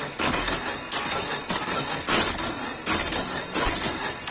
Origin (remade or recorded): recorded